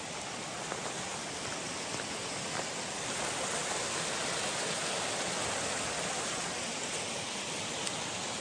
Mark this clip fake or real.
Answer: real